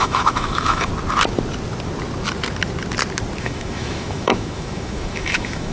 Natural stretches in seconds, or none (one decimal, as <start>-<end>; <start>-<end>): 0.9-3.4